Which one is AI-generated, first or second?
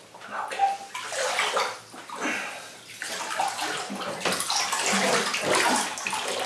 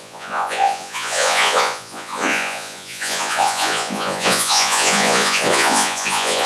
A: second